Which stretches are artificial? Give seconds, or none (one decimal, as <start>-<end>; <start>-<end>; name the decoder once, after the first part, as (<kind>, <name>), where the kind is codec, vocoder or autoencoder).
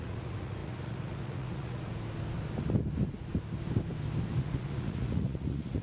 0.0-1.9 (vocoder, Vocos); 4.4-5.8